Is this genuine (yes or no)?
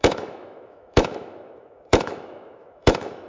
no